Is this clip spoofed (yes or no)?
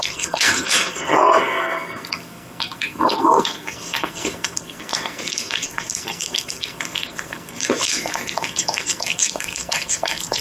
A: yes